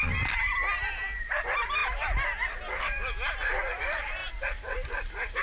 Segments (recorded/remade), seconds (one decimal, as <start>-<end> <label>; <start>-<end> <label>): 0.0-0.6 remade; 0.6-1.2 recorded; 1.2-4.2 remade; 4.2-5.4 recorded